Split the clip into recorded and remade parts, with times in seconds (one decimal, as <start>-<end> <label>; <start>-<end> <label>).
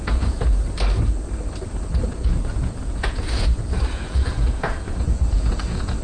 0.0-0.6 remade; 0.6-2.1 recorded; 2.1-6.0 remade